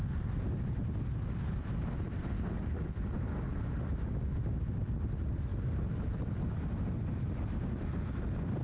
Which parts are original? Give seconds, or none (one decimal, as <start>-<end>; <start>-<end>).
0.0-8.6